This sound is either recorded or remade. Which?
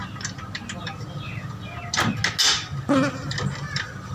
recorded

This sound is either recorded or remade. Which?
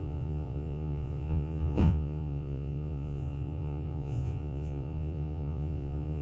remade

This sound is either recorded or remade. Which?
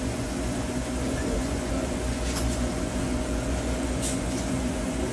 remade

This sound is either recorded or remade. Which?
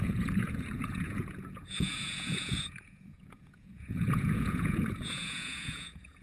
remade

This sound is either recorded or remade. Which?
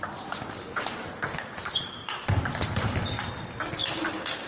recorded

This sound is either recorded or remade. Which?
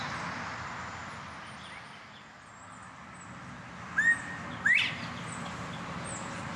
recorded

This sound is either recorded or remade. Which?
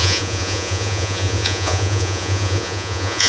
remade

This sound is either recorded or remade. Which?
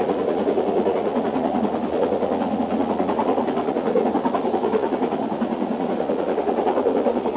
remade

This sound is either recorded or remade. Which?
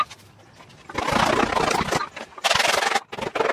recorded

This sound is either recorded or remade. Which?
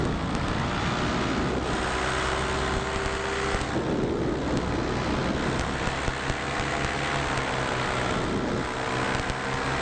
recorded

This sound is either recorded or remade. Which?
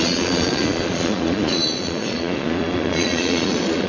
remade